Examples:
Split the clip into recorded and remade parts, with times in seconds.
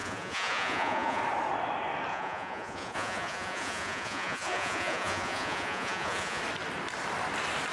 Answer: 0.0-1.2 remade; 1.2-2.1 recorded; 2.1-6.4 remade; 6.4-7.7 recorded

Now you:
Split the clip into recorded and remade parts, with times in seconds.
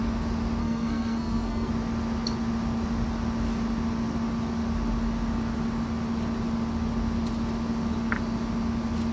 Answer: 0.0-0.6 recorded; 0.6-1.7 remade; 1.7-9.1 recorded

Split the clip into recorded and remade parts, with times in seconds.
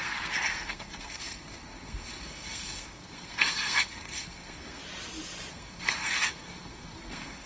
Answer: 0.0-4.8 remade; 4.8-5.5 recorded; 5.5-7.5 remade